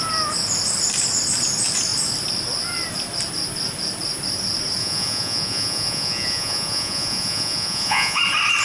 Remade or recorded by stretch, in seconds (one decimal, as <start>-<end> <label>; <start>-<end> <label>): 0.0-4.8 recorded; 4.8-8.2 remade; 8.2-8.6 recorded